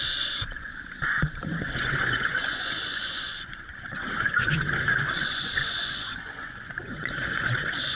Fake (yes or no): yes